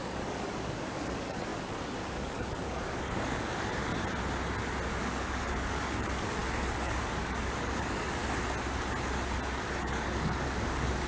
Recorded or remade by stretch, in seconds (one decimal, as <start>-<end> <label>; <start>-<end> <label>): 0.0-3.9 remade; 3.9-5.0 recorded; 5.0-8.2 remade; 8.2-9.6 recorded; 9.6-11.1 remade